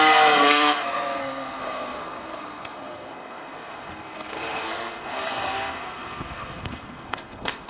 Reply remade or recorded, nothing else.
remade